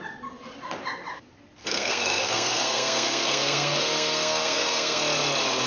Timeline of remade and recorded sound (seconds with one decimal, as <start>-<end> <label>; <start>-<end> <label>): 0.0-1.6 recorded; 1.6-5.0 remade; 5.0-5.7 recorded